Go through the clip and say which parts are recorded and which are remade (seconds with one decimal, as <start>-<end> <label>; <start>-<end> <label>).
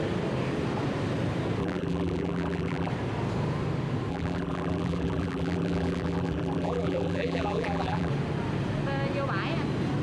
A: 0.0-1.6 recorded; 1.6-2.9 remade; 2.9-4.1 recorded; 4.1-8.1 remade; 8.1-10.0 recorded